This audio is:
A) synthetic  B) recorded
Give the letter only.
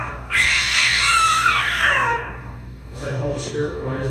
A